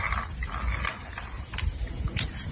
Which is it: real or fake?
real